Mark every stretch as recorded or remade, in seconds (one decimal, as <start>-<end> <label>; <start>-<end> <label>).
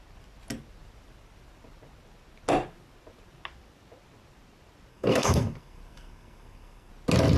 0.0-4.9 recorded; 4.9-6.9 remade; 6.9-7.4 recorded